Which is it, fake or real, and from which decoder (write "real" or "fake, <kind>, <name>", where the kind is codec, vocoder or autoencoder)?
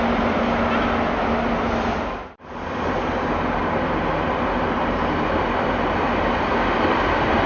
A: real